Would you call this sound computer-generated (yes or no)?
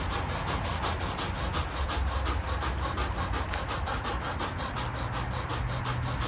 no